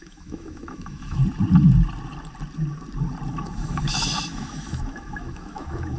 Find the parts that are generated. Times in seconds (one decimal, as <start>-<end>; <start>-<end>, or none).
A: 0.0-1.2; 3.3-6.0